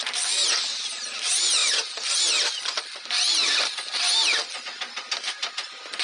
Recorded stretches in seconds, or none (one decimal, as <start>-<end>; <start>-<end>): 0.0-6.0